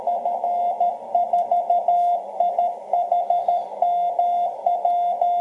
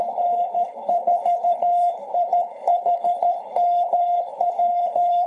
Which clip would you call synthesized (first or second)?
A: second